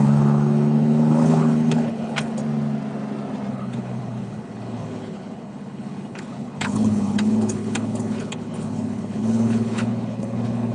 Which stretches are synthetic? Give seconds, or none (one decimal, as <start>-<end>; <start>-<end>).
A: 0.0-2.4; 3.5-10.7